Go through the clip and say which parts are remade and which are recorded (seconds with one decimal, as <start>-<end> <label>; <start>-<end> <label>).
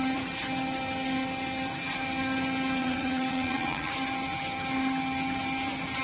0.0-2.8 recorded; 2.8-3.9 remade; 3.9-6.0 recorded